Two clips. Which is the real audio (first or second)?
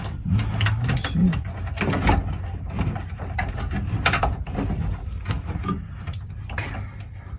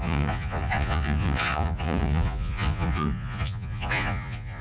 first